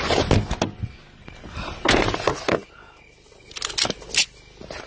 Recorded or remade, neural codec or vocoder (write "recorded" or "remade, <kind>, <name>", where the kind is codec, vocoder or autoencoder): recorded